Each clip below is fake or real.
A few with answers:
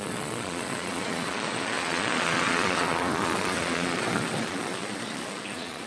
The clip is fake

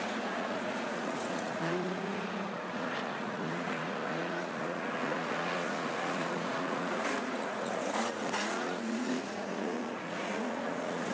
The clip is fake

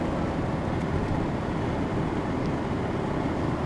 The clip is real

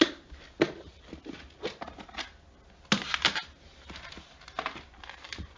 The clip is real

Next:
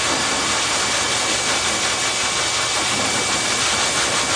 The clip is real